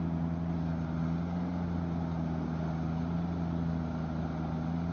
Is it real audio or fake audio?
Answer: real